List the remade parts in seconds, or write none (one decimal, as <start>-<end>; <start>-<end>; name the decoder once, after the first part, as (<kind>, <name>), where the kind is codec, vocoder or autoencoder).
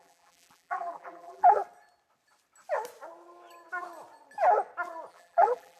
0.0-1.6 (vocoder, BigVGAN v2); 5.1-5.8